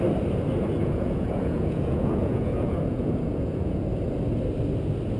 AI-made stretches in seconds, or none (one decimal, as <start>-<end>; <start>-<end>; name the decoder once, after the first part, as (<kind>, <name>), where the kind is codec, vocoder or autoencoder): 0.8-3.9 (vocoder, Vocos)